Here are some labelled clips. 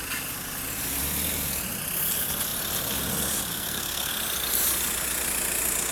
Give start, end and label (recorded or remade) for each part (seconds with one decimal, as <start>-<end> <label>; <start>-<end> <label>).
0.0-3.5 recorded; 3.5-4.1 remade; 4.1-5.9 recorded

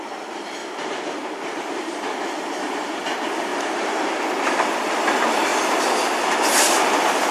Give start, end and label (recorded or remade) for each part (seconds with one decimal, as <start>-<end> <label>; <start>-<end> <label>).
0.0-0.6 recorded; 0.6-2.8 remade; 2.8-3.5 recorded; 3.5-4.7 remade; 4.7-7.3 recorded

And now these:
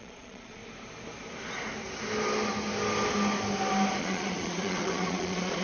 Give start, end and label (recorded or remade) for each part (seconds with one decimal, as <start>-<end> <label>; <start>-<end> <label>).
0.0-0.6 remade; 0.6-4.0 recorded; 4.0-5.6 remade

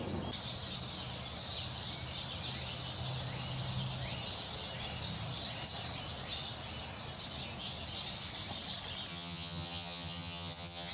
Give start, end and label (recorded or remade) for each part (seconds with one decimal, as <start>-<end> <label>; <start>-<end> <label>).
0.0-9.1 recorded; 9.1-10.9 remade

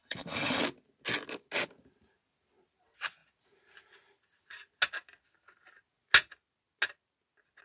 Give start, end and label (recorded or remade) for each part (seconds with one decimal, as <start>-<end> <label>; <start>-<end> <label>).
0.0-0.6 remade; 0.6-7.6 recorded